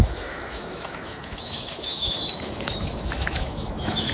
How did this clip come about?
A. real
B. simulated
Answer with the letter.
B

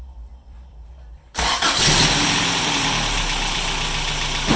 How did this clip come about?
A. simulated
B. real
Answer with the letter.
A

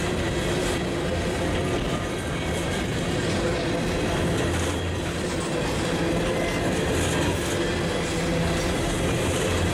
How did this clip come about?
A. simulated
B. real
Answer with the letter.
B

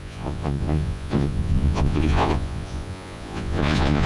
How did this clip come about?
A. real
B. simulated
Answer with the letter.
B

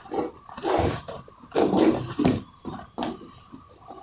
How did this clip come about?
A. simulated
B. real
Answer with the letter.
A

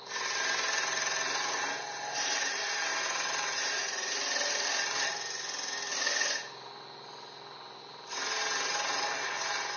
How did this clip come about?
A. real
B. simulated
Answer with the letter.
A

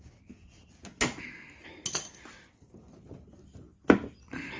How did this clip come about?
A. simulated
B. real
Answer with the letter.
B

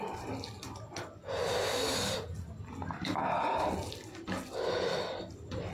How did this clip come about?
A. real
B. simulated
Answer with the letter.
A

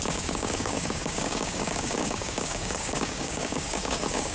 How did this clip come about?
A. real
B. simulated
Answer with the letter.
B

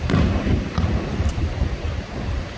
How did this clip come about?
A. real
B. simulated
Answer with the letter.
B